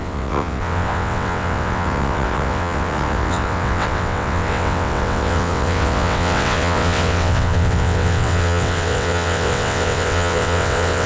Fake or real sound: fake